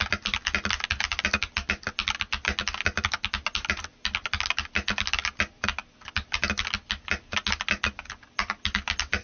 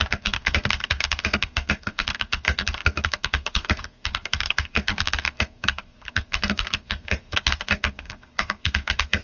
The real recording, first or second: first